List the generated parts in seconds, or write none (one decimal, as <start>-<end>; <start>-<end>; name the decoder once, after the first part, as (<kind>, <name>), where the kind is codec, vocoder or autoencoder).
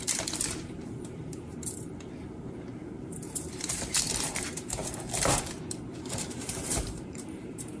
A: 0.0-4.8 (vocoder, BigVGAN v2); 6.1-7.8